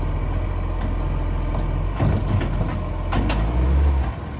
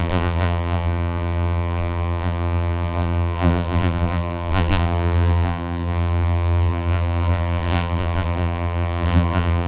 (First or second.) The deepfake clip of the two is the second